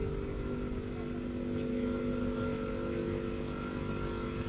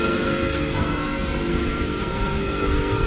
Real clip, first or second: first